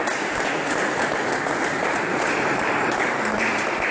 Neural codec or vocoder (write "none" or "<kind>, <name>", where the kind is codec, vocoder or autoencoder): vocoder, BigVGAN v2